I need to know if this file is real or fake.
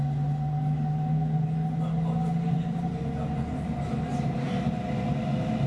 real